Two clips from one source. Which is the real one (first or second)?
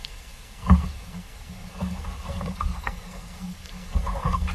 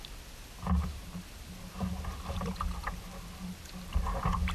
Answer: second